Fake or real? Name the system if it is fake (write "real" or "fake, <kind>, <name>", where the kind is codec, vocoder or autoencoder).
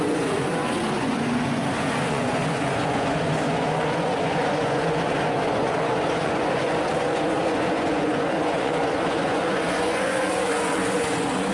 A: fake, vocoder, Vocos